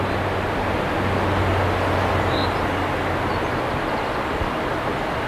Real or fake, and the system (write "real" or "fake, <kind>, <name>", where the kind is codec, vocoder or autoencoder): real